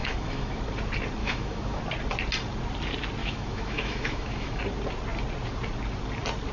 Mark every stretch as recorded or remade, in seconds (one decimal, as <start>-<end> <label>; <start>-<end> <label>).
0.0-0.6 remade; 0.6-1.2 recorded; 1.2-1.8 remade; 1.8-3.2 recorded; 3.2-4.6 remade; 4.6-6.5 recorded

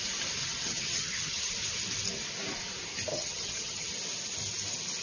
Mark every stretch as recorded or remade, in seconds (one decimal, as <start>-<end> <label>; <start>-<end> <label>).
0.0-0.4 recorded; 0.4-1.5 remade; 1.5-3.1 recorded; 3.1-3.9 remade; 3.9-5.0 recorded

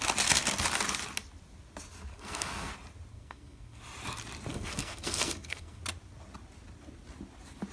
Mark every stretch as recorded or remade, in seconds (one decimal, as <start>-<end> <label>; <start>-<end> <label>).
0.0-2.1 recorded; 2.1-2.7 remade; 2.7-3.1 recorded; 3.1-3.8 remade; 3.8-4.5 recorded; 4.5-5.8 remade; 5.8-7.7 recorded

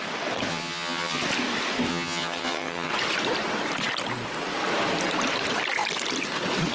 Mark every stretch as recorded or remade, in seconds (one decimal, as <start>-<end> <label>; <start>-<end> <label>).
0.0-0.5 recorded; 0.5-1.2 remade; 1.2-1.9 recorded; 1.9-2.9 remade; 2.9-6.7 recorded

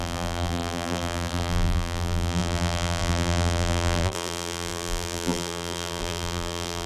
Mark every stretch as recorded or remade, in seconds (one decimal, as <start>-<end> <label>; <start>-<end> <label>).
0.0-6.9 remade

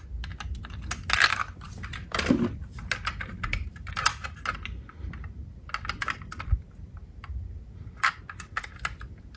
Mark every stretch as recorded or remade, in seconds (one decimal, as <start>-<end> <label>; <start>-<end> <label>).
0.0-1.3 recorded; 1.3-2.7 remade; 2.7-9.4 recorded